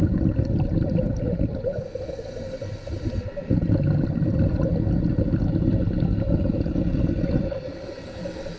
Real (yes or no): yes